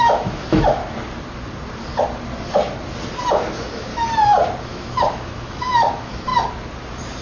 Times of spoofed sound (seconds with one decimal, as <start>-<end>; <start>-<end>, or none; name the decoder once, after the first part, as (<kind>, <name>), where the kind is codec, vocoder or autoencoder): 0.0-0.8 (autoencoder, DAC-VAE); 3.5-3.9; 4.6-6.3